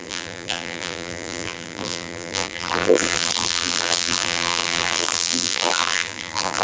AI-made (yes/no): yes